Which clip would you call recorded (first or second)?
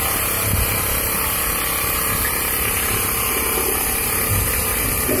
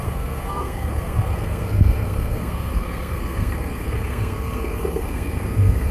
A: first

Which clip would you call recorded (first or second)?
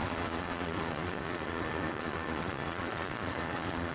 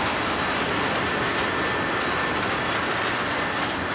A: second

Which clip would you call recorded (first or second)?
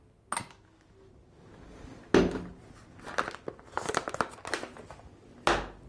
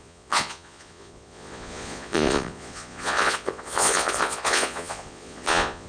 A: first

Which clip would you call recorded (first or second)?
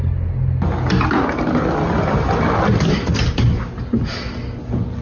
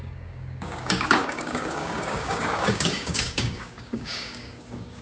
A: first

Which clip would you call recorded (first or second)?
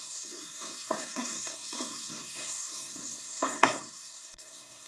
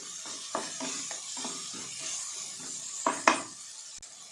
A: second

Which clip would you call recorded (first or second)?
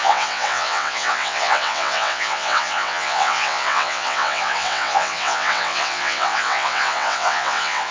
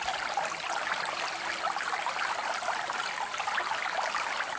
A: second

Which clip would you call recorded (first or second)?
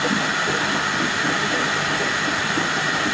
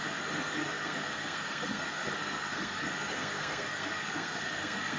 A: first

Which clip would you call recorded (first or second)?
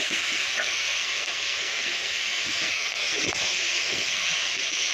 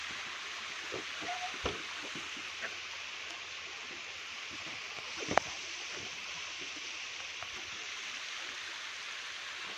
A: second